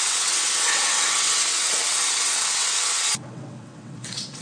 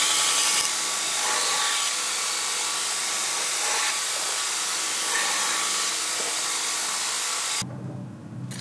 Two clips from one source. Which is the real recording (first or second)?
second